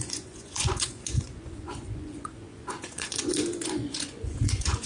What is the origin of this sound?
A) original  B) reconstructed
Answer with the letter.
B